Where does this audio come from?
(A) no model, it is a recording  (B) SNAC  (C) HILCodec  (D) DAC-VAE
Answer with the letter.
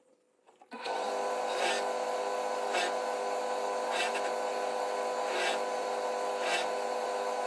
A